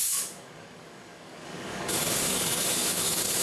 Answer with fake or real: fake